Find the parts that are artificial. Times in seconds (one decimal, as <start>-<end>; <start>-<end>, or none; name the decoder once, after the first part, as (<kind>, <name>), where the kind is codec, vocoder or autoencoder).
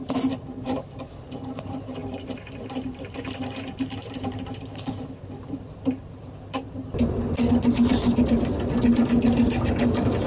0.5-1.0 (vocoder, BigVGAN v2); 2.0-6.3